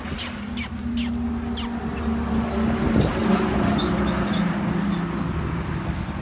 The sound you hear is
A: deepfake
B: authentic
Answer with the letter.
B